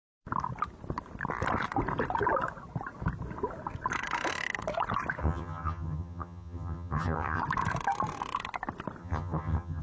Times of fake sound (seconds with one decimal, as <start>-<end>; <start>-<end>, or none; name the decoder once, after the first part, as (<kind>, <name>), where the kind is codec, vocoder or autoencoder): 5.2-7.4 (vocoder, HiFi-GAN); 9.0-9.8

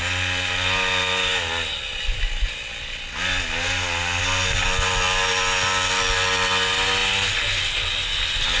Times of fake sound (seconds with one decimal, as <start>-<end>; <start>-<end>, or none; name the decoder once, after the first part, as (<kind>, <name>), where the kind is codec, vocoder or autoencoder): none

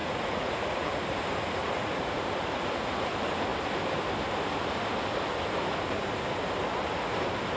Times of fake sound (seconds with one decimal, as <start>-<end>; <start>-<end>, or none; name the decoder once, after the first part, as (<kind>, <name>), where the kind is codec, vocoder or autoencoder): 0.0-1.2 (vocoder, Vocos); 1.6-3.1

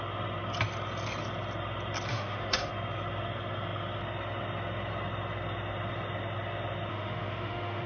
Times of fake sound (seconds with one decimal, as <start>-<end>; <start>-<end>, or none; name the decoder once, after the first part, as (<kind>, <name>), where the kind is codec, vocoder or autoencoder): 2.1-2.7 (autoencoder, DAC-VAE); 6.9-7.9

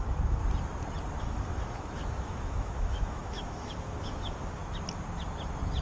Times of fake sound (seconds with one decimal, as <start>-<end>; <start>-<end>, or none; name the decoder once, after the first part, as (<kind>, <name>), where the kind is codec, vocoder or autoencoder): 0.0-0.4 (autoencoder, DAC-VAE); 1.2-4.6

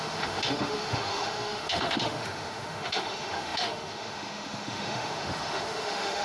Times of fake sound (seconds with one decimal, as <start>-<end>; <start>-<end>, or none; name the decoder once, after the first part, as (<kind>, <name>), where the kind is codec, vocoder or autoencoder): 0.0-6.2 (autoencoder, DAC-VAE)

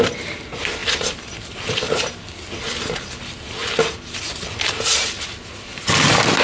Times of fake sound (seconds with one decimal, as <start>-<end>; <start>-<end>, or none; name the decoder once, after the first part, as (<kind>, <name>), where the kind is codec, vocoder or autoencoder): none